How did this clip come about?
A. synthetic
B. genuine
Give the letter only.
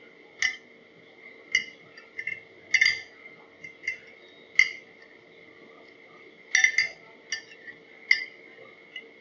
B